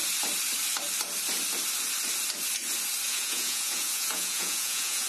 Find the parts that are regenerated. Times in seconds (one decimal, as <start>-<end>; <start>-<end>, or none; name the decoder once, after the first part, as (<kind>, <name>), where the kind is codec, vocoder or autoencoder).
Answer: 3.1-5.1 (vocoder, Vocos)

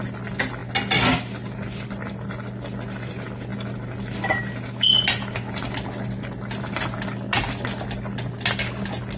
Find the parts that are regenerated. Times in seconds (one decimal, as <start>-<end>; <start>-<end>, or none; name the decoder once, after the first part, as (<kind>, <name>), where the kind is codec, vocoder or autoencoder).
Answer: none

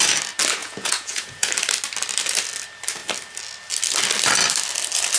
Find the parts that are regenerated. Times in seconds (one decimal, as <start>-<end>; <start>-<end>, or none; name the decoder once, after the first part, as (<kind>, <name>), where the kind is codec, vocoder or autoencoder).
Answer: 0.6-1.5 (vocoder, Vocos)

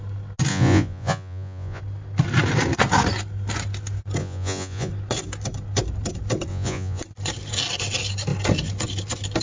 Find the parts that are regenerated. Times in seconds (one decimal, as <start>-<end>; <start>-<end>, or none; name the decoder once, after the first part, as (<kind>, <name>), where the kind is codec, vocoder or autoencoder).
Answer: 0.5-1.8 (vocoder, Vocos); 4.2-4.9; 6.5-7.0